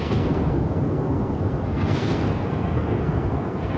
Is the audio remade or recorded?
remade